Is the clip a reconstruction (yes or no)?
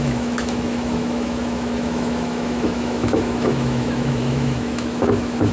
yes